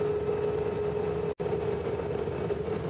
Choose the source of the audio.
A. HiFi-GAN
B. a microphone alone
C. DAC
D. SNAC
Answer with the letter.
B